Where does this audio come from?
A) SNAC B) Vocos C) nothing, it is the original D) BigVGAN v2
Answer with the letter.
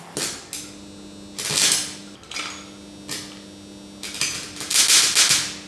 C